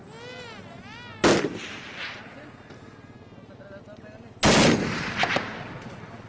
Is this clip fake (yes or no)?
no